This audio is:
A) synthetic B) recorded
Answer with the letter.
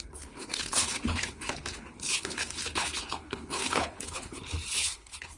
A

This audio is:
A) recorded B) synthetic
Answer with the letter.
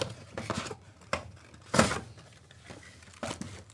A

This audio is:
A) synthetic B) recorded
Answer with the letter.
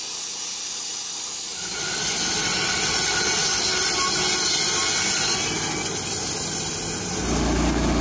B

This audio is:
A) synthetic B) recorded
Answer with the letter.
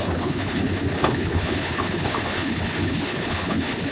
A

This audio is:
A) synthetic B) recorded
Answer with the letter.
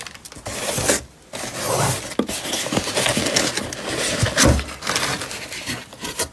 B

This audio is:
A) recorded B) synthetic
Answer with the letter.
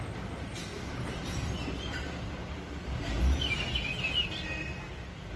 A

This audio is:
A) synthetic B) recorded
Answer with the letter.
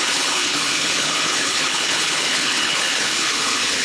A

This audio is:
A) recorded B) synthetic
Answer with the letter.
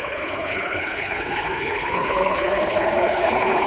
B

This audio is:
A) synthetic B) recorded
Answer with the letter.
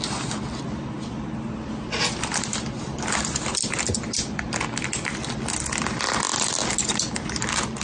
B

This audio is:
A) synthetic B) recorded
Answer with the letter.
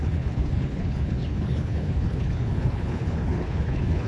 A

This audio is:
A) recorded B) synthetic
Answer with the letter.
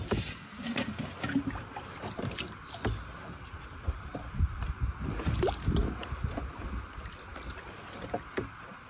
A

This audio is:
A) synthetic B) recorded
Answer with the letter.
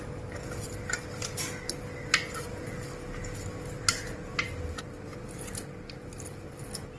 B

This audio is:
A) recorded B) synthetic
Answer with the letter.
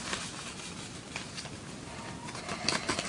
A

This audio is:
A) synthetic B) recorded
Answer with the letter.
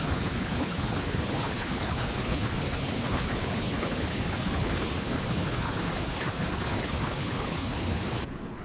A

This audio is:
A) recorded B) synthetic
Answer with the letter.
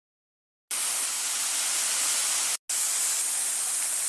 A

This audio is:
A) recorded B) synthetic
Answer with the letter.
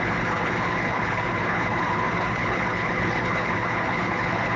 B